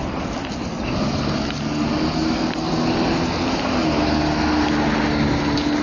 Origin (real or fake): real